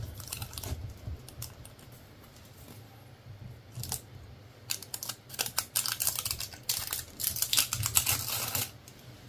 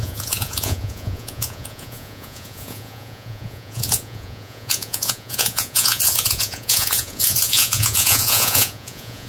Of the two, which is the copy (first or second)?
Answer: second